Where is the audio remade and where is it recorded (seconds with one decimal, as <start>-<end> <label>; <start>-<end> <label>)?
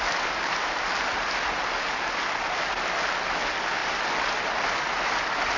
0.0-5.6 recorded